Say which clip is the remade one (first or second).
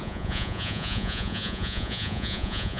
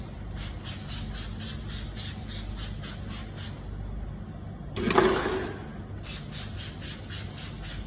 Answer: first